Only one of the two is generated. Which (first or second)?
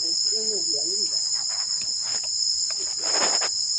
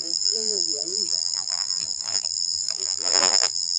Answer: second